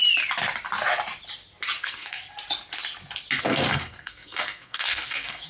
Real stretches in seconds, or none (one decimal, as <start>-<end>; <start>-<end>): 0.0-1.8; 2.2-3.4